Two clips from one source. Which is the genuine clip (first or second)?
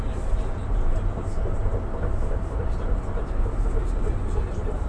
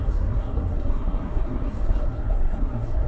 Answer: first